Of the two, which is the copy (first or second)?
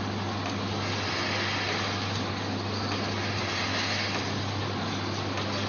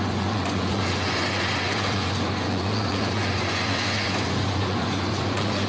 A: second